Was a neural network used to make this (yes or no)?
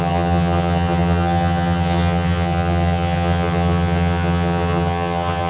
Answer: yes